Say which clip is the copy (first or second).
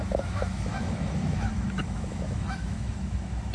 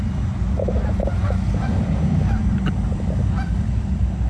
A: first